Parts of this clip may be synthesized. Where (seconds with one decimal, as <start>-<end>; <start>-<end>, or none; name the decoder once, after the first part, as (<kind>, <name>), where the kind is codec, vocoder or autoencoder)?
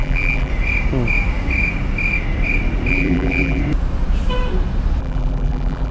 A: 0.0-0.5 (vocoder, BigVGAN v2); 2.9-3.6; 5.0-5.9